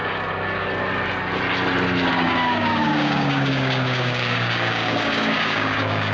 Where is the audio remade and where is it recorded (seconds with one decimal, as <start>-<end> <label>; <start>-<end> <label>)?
0.0-2.1 recorded; 2.1-6.1 remade